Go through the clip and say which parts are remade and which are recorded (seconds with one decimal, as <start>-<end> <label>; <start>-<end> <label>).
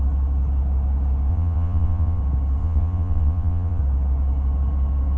0.0-1.3 recorded; 1.3-2.2 remade; 2.2-2.6 recorded; 2.6-3.8 remade; 3.8-5.2 recorded